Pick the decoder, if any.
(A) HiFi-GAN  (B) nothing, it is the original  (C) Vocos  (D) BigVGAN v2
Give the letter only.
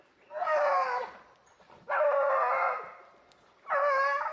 B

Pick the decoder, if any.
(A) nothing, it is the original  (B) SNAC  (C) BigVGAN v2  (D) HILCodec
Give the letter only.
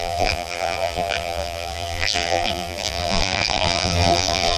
C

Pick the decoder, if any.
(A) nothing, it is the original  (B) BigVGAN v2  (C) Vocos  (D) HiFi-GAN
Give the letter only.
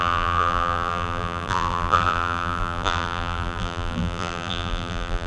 B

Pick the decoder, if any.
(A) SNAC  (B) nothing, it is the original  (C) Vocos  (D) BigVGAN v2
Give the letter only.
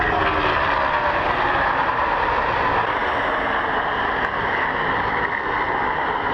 B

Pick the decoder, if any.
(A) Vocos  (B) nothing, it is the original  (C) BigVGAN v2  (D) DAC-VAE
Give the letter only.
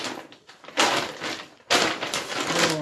B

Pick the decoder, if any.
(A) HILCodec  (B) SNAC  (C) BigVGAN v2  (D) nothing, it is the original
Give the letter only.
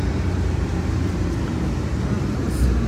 C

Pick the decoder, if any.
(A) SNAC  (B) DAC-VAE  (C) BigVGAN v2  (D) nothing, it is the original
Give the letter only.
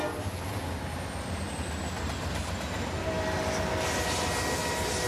D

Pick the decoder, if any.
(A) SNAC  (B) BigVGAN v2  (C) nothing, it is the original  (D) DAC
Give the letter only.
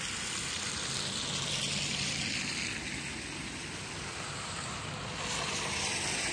C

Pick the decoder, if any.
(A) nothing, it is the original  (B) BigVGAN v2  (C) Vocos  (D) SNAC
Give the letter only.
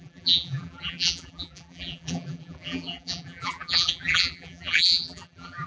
B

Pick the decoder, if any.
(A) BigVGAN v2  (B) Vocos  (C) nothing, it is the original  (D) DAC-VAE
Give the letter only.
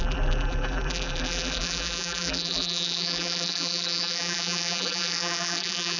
A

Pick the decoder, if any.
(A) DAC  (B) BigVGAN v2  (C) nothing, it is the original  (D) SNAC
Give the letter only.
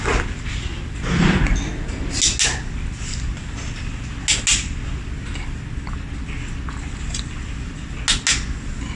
C